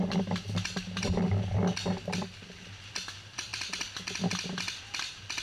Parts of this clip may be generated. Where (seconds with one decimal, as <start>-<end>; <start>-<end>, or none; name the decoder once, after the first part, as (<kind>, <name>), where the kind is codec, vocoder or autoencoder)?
none